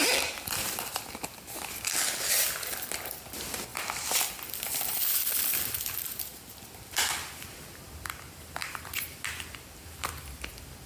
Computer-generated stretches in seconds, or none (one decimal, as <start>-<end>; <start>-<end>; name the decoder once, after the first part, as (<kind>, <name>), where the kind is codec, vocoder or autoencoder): 3.7-4.2 (vocoder, BigVGAN v2); 8.6-9.2; 9.8-10.5